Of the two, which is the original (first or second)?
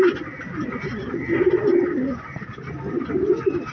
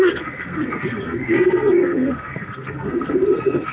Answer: first